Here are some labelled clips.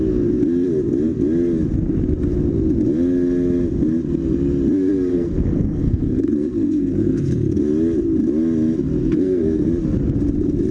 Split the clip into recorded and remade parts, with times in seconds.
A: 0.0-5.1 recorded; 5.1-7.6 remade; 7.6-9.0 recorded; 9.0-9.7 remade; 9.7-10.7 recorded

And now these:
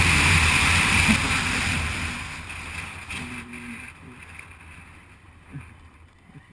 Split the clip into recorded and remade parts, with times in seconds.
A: 0.0-6.5 recorded

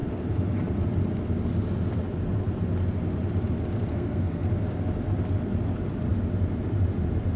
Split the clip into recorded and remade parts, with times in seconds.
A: 0.0-3.9 recorded; 3.9-4.5 remade; 4.5-7.4 recorded